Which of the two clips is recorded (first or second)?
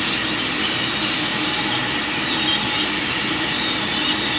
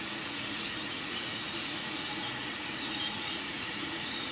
first